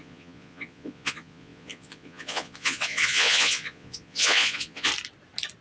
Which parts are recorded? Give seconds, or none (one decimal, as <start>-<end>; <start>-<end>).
4.9-5.6